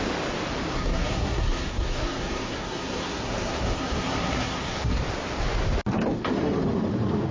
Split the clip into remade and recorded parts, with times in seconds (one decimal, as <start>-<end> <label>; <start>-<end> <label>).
0.0-0.7 recorded; 0.7-5.0 remade; 5.0-7.3 recorded